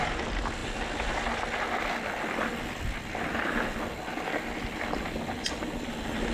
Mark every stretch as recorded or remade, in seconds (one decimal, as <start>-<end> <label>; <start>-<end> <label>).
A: 0.0-6.3 recorded

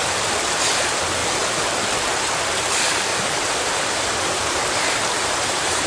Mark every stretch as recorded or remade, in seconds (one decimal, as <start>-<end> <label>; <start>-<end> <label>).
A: 0.0-3.1 recorded; 3.1-4.8 remade; 4.8-5.2 recorded; 5.2-5.9 remade

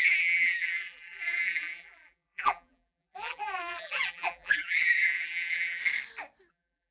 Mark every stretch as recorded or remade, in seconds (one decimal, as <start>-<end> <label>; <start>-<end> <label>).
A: 0.0-5.8 remade; 5.8-6.5 recorded; 6.5-6.9 remade

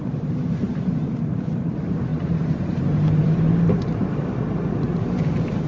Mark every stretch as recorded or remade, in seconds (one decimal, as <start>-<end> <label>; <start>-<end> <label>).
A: 0.0-0.7 remade; 0.7-1.6 recorded; 1.6-5.7 remade

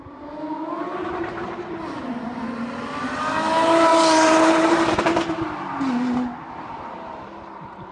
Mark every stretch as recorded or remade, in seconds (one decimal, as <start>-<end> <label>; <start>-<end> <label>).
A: 0.0-3.9 recorded; 3.9-5.0 remade; 5.0-7.9 recorded

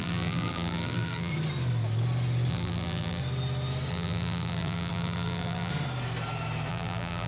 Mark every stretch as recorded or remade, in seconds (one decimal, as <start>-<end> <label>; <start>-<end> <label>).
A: 0.0-1.3 remade; 1.3-2.5 recorded; 2.5-3.2 remade; 3.2-3.9 recorded; 3.9-5.7 remade; 5.7-6.7 recorded; 6.7-7.3 remade